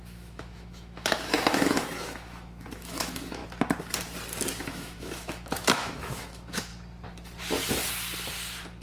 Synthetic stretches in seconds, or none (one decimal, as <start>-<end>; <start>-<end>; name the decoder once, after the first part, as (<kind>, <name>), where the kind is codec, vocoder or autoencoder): 0.0-3.4 (autoencoder, DAC-VAE); 4.6-6.7